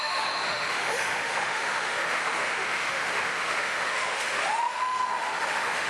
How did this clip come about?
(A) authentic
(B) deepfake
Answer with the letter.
B